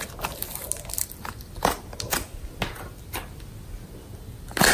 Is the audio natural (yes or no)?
yes